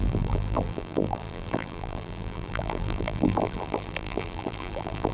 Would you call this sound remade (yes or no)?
yes